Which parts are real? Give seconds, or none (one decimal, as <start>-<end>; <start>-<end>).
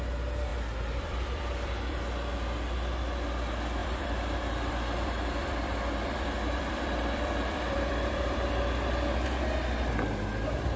0.0-0.5; 2.0-3.8; 8.5-10.8